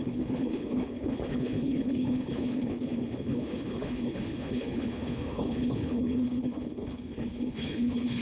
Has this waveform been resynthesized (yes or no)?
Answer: yes